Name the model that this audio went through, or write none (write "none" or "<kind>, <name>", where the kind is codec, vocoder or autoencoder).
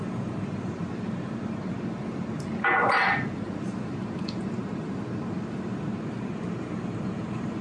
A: vocoder, BigVGAN v2